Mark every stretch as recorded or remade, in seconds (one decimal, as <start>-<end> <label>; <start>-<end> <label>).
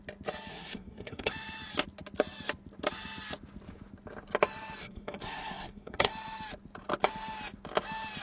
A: 0.0-0.5 recorded; 0.5-1.3 remade; 1.3-4.8 recorded; 4.8-6.1 remade; 6.1-8.2 recorded